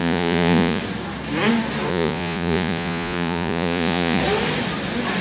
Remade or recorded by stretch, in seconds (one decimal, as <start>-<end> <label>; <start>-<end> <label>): 0.0-0.8 remade; 0.8-1.9 recorded; 1.9-4.2 remade; 4.2-5.2 recorded